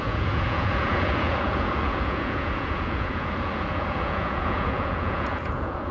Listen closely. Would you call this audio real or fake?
fake